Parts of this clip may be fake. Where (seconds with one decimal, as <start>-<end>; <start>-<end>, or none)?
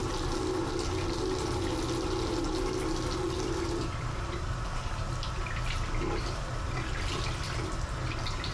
none